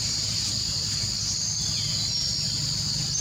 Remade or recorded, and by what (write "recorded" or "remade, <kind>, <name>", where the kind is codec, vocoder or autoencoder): recorded